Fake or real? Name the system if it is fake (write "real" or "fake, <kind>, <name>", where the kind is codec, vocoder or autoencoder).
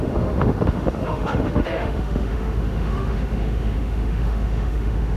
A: fake, autoencoder, DAC-VAE